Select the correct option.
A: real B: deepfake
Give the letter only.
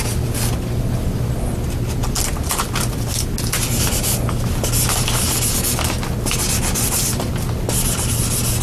A